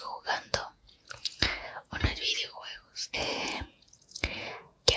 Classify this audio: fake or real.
fake